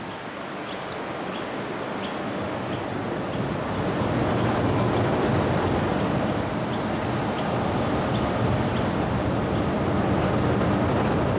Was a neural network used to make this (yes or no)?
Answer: no